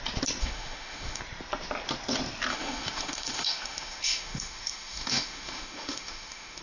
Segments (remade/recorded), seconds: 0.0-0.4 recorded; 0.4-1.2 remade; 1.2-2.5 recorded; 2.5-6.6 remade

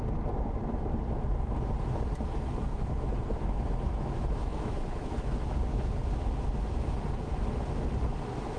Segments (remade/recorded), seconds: 0.0-2.7 recorded; 2.7-5.5 remade; 5.5-8.6 recorded

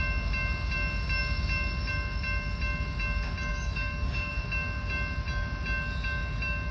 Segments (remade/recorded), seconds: 0.0-3.5 recorded; 3.5-4.3 remade; 4.3-6.7 recorded

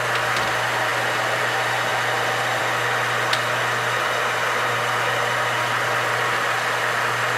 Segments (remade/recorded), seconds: 0.0-7.4 recorded

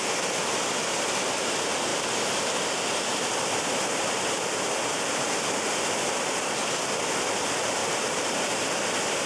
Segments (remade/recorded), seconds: 0.0-1.9 recorded; 1.9-2.8 remade; 2.8-7.8 recorded; 7.8-8.6 remade; 8.6-9.3 recorded

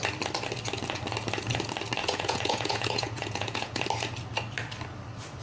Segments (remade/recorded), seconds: 0.0-2.0 recorded; 2.0-3.8 remade; 3.8-5.4 recorded

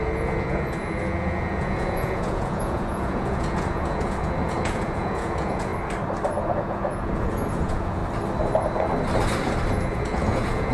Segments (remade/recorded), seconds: 0.0-5.7 remade; 5.7-6.4 recorded; 6.4-8.0 remade; 8.0-9.7 recorded; 9.7-10.7 remade